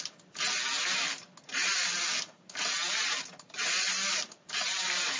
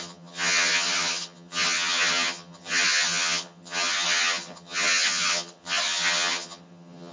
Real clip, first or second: first